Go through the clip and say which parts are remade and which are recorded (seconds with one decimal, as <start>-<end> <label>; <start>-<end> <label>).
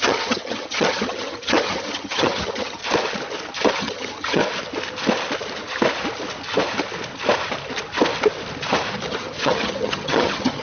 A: 0.0-2.8 remade; 2.8-3.7 recorded; 3.7-4.4 remade; 4.4-9.1 recorded; 9.1-10.6 remade